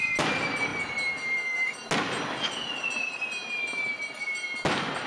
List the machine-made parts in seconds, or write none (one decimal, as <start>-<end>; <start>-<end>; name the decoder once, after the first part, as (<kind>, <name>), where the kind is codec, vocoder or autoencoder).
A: none